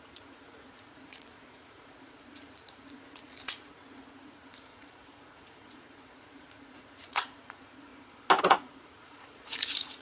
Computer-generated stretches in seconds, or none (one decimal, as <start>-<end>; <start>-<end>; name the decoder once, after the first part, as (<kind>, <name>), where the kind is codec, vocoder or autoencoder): 0.0-7.9 (vocoder, Vocos); 8.4-10.0